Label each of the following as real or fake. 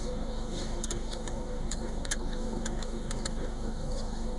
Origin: fake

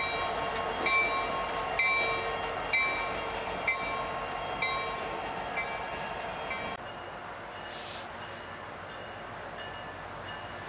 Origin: real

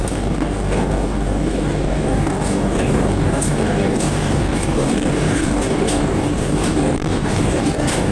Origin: fake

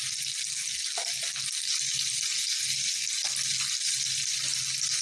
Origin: real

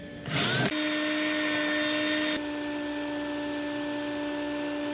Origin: real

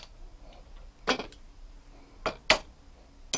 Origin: real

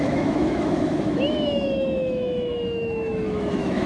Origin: fake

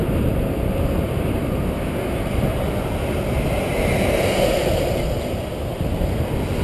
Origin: real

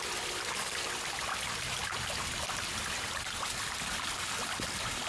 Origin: real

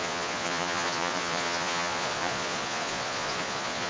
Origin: fake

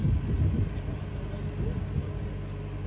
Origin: real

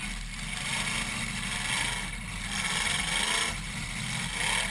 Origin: real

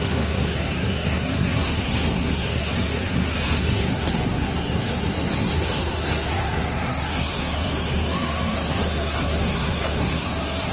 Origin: fake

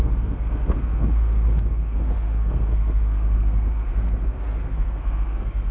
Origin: fake